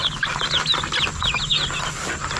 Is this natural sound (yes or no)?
yes